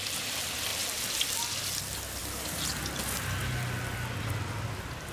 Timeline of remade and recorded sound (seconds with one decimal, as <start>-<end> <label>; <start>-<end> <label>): 0.0-2.2 recorded; 2.2-2.8 remade; 2.8-5.1 recorded

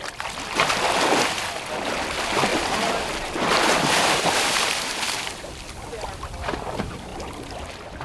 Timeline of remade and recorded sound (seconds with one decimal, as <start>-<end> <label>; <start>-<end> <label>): 0.0-2.5 recorded; 2.5-5.5 remade; 5.5-8.0 recorded

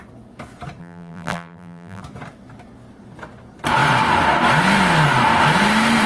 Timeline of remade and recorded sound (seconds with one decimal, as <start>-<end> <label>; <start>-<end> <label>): 0.0-0.8 recorded; 0.8-2.0 remade; 2.0-6.1 recorded

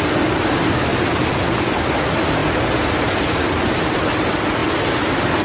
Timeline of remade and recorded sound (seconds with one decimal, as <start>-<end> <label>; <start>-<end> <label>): 0.0-2.4 recorded; 2.4-4.1 remade; 4.1-5.4 recorded

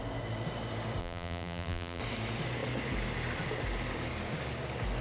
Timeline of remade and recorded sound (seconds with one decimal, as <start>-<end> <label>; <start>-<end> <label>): 0.0-1.0 recorded; 1.0-2.0 remade; 2.0-5.0 recorded

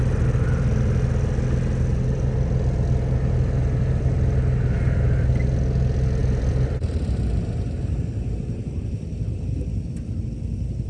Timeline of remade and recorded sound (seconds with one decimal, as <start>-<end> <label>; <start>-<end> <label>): 0.0-6.2 recorded; 6.2-10.3 remade; 10.3-10.9 recorded

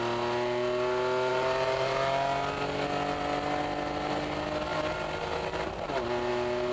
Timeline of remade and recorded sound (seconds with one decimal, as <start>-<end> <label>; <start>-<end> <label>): 0.0-1.3 recorded; 1.3-2.0 remade; 2.0-6.7 recorded